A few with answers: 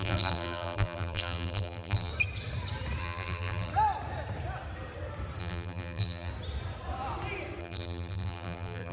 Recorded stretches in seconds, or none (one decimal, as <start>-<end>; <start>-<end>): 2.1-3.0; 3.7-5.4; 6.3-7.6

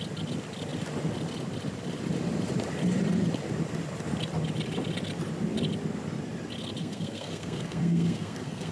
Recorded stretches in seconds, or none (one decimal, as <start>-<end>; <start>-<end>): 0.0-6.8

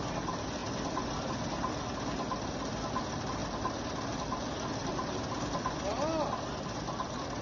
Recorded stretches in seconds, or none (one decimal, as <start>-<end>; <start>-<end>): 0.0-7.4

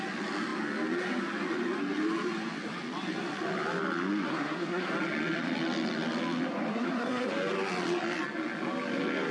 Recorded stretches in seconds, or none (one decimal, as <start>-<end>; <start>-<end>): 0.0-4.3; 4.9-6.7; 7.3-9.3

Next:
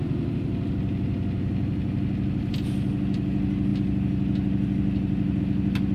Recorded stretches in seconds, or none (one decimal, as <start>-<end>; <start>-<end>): 0.0-5.9

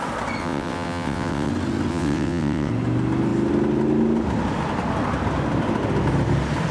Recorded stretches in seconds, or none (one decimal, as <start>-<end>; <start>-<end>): 0.0-0.4; 1.5-1.9; 2.7-6.7

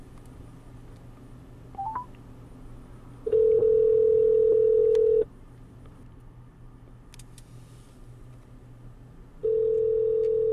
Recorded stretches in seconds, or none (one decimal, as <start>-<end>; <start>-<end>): 0.0-10.5

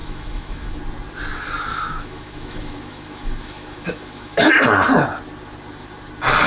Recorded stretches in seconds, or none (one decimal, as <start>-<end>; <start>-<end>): 0.8-1.7; 4.5-6.5